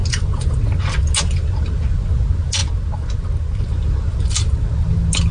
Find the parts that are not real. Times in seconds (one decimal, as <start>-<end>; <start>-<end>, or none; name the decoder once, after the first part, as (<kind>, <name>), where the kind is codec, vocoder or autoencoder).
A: none